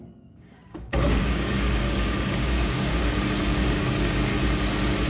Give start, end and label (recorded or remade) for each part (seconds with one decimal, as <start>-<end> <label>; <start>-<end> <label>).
0.0-2.9 remade; 2.9-3.4 recorded; 3.4-4.3 remade; 4.3-5.1 recorded